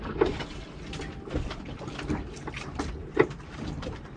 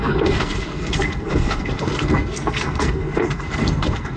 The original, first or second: first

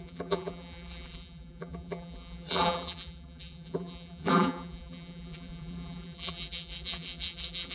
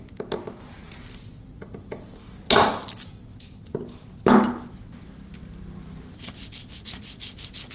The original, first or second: second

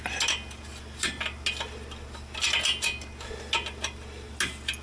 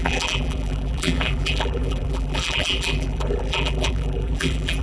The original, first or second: first